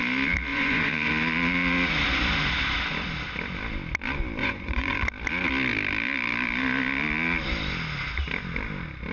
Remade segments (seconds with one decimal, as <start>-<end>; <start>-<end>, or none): 0.5-1.1; 4.4-5.0